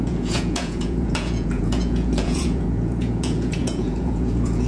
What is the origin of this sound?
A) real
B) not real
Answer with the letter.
B